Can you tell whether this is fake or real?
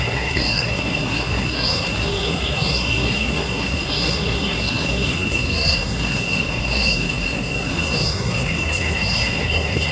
fake